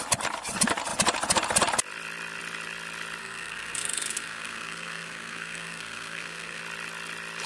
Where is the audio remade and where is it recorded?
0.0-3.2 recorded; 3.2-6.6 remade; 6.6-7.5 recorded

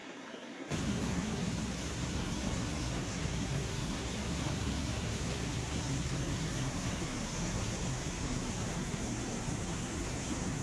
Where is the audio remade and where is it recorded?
0.0-10.6 remade

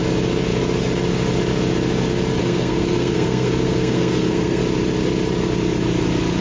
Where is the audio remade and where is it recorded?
0.0-2.4 recorded; 2.4-4.6 remade; 4.6-6.4 recorded

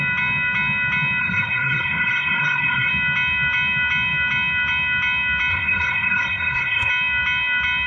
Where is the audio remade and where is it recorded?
0.0-1.2 recorded; 1.2-2.9 remade; 2.9-5.5 recorded; 5.5-6.9 remade; 6.9-7.9 recorded

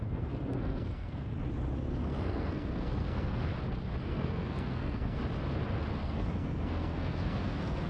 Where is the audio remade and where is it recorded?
0.0-1.3 remade; 1.3-1.9 recorded; 1.9-3.5 remade; 3.5-4.0 recorded; 4.0-5.2 remade; 5.2-6.0 recorded; 6.0-7.9 remade

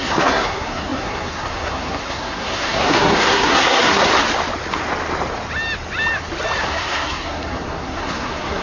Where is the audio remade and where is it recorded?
0.0-4.1 remade; 4.1-6.6 recorded; 6.6-8.6 remade

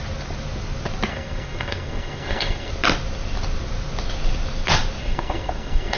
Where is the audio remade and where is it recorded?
0.0-1.1 recorded; 1.1-2.7 remade; 2.7-5.0 recorded; 5.0-6.0 remade